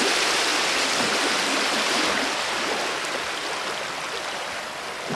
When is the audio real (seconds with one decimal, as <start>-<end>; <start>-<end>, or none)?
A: 0.0-5.1